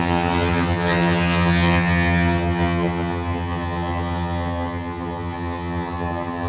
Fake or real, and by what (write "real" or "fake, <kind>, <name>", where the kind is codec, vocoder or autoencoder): fake, vocoder, HiFi-GAN